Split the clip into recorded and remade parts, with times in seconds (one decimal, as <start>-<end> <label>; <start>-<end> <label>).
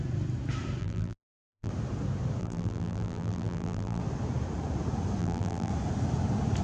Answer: 0.0-0.8 recorded; 0.8-1.7 remade; 1.7-2.4 recorded; 2.4-4.0 remade; 4.0-5.2 recorded; 5.2-5.7 remade; 5.7-6.6 recorded